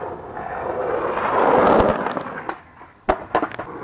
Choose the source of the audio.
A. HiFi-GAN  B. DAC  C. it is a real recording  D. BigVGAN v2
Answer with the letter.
C